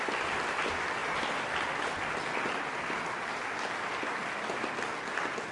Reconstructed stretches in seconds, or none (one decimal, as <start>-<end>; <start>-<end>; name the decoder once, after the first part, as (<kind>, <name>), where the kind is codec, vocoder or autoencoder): none